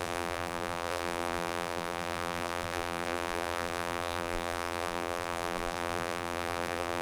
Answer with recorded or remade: remade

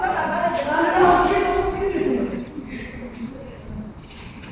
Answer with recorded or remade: recorded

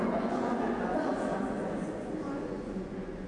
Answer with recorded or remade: remade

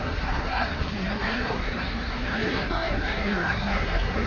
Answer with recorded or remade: remade